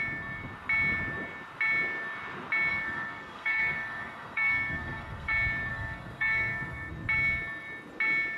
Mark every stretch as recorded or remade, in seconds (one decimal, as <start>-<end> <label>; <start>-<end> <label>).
0.0-2.7 recorded; 2.7-5.3 remade; 5.3-5.7 recorded; 5.7-6.9 remade; 6.9-8.4 recorded